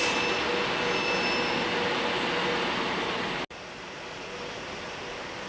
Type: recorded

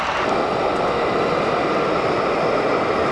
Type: recorded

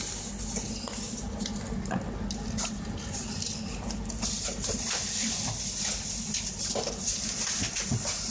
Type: recorded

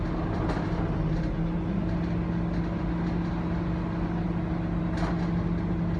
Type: recorded